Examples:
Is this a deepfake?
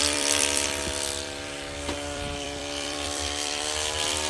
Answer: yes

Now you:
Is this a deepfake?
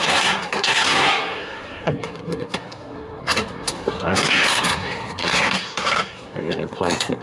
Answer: yes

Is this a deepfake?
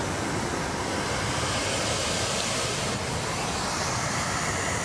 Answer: no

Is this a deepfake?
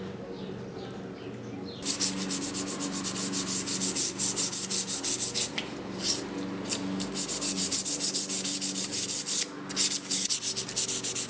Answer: no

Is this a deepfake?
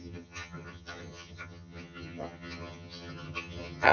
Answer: yes